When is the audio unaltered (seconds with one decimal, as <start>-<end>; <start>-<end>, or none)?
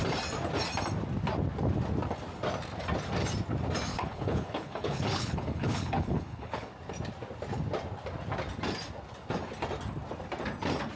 0.0-3.9; 6.7-11.0